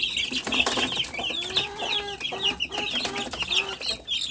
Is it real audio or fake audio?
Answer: real